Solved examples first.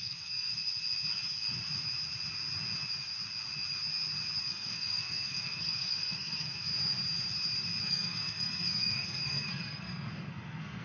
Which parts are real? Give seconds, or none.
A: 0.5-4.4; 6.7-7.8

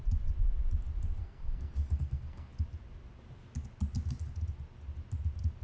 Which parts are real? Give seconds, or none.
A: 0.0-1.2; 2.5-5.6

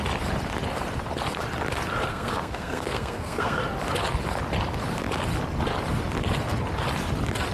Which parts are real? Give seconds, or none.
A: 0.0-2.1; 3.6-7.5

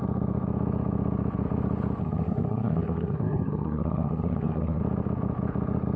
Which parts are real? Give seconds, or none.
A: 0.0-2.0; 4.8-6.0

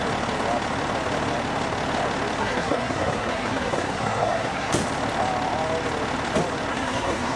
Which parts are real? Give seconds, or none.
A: 0.0-2.4; 4.7-6.7